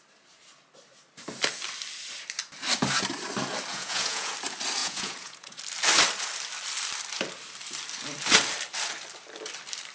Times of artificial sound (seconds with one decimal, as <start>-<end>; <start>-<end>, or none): 3.7-4.3; 4.8-5.6